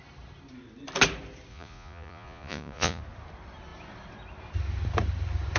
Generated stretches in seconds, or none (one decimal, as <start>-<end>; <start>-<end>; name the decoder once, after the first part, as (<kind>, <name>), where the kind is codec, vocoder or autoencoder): 1.5-3.0 (vocoder, Vocos)